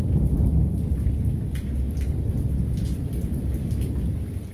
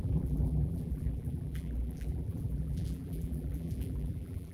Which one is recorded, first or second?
first